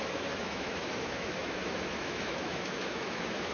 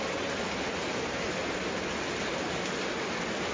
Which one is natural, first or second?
second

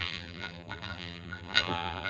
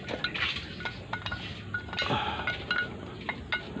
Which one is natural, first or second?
second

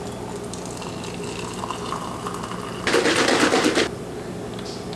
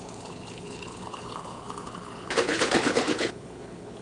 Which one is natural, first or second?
first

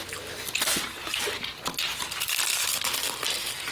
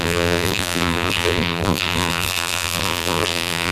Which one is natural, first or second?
first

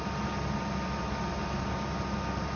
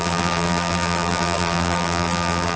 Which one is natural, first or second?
first